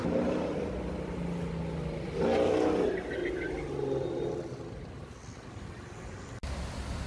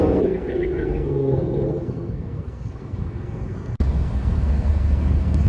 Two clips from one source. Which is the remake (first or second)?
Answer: second